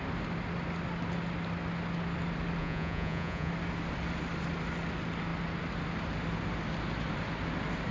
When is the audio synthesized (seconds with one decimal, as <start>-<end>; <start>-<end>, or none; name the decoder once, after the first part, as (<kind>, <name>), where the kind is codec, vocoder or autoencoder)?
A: 2.6-3.5 (vocoder, Vocos)